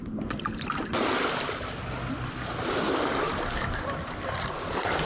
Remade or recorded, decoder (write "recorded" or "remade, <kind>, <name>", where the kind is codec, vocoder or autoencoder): recorded